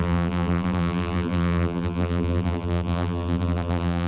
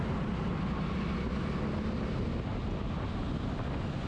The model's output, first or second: first